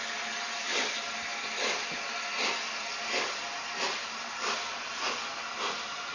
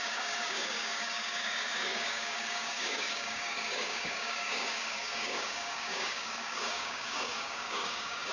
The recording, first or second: first